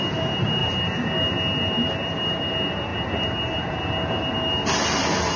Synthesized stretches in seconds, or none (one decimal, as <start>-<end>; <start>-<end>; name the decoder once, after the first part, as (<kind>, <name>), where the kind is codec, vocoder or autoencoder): none